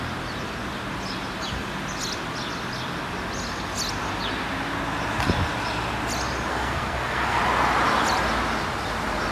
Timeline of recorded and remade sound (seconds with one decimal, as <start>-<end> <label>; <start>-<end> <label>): 0.0-6.5 recorded; 6.5-7.4 remade; 7.4-9.3 recorded